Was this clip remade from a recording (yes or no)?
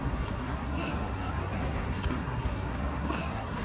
yes